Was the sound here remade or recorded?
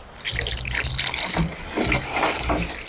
recorded